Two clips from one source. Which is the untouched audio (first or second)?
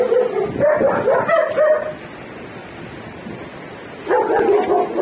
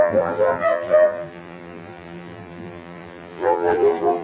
first